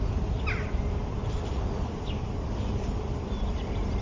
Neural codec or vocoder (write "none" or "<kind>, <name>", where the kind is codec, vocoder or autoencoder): none